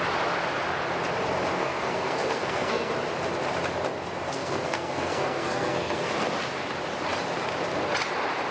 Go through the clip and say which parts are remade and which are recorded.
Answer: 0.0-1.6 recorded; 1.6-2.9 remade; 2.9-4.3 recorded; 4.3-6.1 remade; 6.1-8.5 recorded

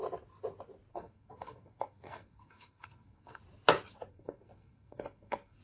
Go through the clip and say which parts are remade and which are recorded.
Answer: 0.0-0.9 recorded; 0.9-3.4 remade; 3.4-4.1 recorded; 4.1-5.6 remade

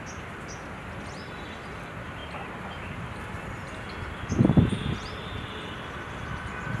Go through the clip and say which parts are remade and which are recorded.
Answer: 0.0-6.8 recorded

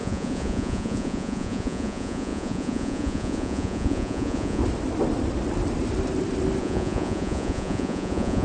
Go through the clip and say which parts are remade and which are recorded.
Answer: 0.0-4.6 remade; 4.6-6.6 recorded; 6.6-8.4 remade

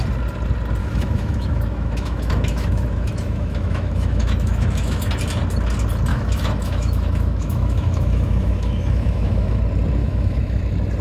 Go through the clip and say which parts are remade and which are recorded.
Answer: 0.0-0.8 recorded; 0.8-5.1 remade; 5.1-6.1 recorded; 6.1-9.6 remade; 9.6-10.0 recorded; 10.0-10.6 remade; 10.6-11.0 recorded

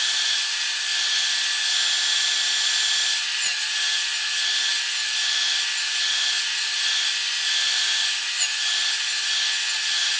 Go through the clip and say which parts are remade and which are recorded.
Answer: 0.0-10.2 recorded

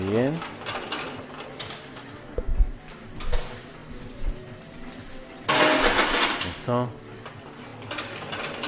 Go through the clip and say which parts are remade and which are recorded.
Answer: 0.0-8.7 recorded